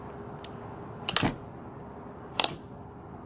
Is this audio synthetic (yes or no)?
no